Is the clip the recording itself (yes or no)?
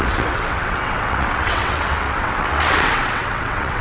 no